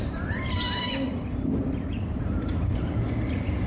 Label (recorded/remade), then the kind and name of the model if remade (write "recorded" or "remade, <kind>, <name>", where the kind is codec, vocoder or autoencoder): remade, vocoder, BigVGAN v2